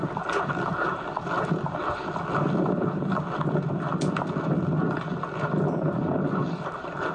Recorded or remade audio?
remade